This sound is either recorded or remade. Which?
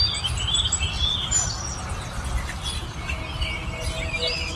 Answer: recorded